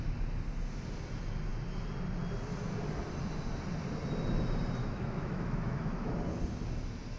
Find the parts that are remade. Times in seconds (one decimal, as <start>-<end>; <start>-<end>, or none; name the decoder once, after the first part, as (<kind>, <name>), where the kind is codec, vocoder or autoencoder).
4.8-6.1 (autoencoder, DAC-VAE)